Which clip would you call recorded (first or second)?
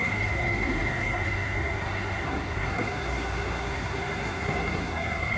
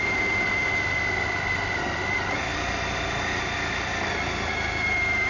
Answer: second